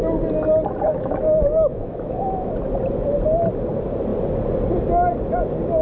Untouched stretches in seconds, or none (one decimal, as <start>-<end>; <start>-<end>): 0.0-0.9; 2.5-5.8